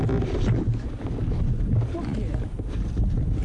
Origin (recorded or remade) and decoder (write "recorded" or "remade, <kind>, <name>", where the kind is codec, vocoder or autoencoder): recorded